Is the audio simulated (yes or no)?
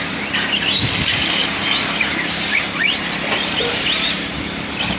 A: yes